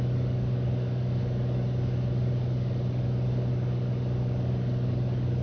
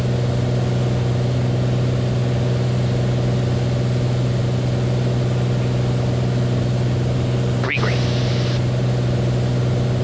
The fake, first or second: first